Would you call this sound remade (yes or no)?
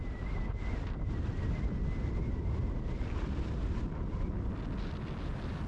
no